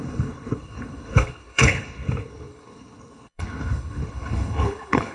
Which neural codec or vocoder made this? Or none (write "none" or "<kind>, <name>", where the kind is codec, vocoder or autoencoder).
codec, HILCodec